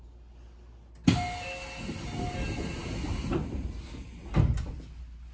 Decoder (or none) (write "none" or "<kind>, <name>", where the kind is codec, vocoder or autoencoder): none